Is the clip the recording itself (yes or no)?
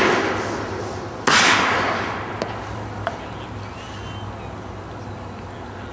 yes